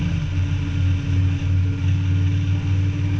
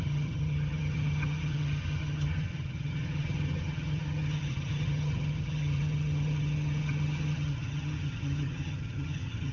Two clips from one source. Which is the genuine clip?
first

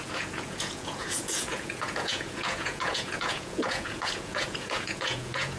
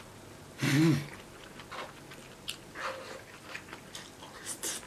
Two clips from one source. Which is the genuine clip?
second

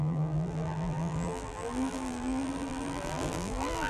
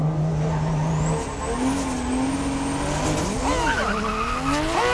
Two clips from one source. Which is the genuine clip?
second